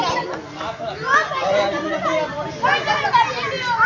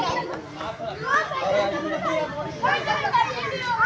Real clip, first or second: first